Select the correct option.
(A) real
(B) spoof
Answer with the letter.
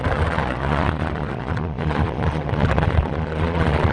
B